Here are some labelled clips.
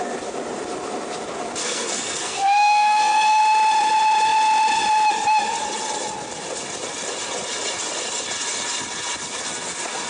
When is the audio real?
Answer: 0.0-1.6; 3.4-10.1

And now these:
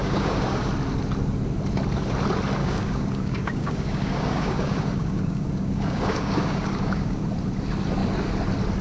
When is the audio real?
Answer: 0.7-2.6; 7.2-8.8